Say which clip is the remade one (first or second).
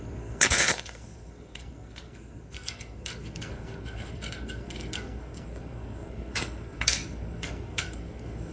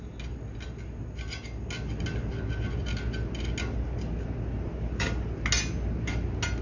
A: first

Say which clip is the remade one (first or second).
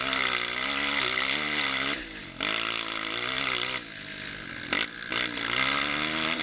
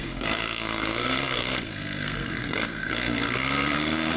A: second